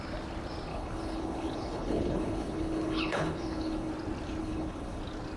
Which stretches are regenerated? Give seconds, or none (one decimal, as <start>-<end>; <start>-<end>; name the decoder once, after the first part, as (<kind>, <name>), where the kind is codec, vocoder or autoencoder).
0.7-3.9 (codec, HILCodec); 4.4-5.0

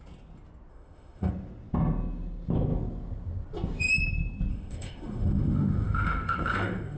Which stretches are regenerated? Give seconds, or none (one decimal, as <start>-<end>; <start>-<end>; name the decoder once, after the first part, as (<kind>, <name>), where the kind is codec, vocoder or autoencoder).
0.7-1.3 (autoencoder, DAC-VAE); 4.5-7.0

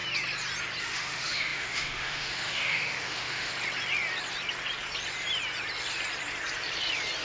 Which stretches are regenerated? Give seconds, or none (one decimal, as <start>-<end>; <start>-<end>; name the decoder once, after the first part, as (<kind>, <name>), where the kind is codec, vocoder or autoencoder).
0.8-3.5 (autoencoder, DAC-VAE)

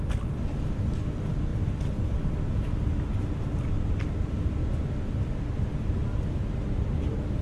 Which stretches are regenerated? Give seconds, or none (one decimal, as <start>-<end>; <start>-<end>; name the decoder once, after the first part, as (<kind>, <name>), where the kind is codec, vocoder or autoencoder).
none